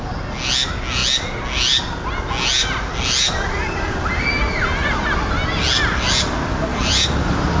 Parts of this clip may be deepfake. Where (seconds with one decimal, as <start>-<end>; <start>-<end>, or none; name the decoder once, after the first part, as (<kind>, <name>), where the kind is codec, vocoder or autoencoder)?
6.7-7.6 (vocoder, BigVGAN v2)